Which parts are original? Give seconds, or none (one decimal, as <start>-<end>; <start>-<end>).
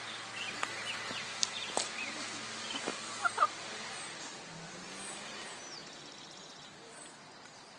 0.0-7.8